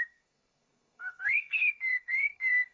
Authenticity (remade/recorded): remade